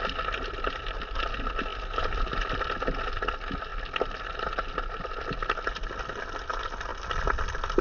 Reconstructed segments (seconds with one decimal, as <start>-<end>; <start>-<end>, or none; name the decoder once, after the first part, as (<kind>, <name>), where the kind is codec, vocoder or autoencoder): 1.7-2.5 (vocoder, BigVGAN v2); 3.7-5.9; 6.9-7.8